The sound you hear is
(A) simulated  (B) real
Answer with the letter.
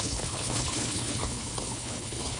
A